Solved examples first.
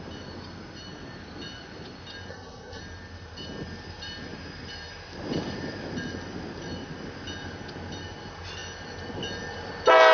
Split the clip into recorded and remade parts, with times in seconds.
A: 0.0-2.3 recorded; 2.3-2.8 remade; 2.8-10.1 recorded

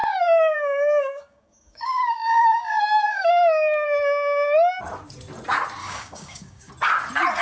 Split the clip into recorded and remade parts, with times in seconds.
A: 0.0-3.3 remade; 3.3-5.8 recorded; 5.8-6.7 remade; 6.7-7.4 recorded

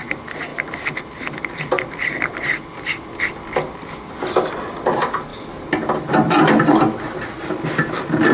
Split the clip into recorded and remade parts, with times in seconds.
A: 0.0-8.3 recorded

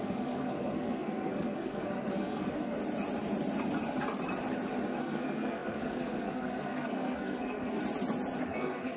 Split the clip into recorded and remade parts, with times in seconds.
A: 0.0-2.8 remade; 2.8-5.0 recorded; 5.0-7.8 remade; 7.8-8.4 recorded; 8.4-9.0 remade

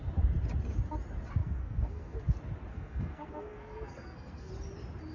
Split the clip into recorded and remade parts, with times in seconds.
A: 0.0-1.4 recorded; 1.4-2.2 remade; 2.2-2.7 recorded; 2.7-4.5 remade; 4.5-5.1 recorded